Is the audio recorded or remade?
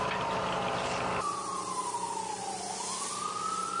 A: recorded